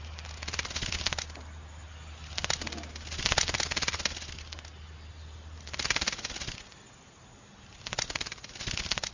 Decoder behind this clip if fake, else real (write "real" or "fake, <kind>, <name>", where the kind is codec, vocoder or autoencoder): real